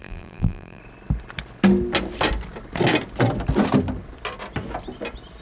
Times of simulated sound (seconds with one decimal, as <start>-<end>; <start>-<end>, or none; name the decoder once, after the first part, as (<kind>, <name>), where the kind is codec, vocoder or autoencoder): 0.0-0.8 (vocoder, BigVGAN v2)